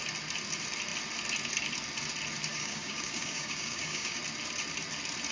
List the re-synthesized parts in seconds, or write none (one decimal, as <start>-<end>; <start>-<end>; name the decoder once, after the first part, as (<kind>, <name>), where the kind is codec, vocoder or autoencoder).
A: 2.5-4.2 (codec, DAC)